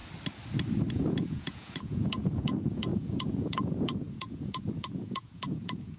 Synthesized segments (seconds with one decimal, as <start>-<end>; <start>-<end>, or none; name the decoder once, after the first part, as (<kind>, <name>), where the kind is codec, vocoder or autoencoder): 0.9-6.0 (vocoder, Vocos)